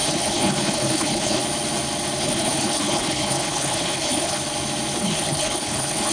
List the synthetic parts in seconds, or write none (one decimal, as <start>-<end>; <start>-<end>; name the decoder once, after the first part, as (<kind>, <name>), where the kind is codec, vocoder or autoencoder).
0.0-1.4 (codec, HILCodec); 2.2-4.4; 5.0-6.1